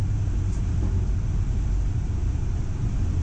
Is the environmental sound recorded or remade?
recorded